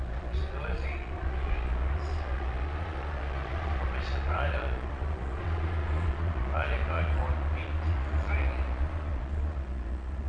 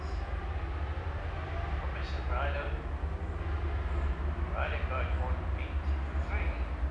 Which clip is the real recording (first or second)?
second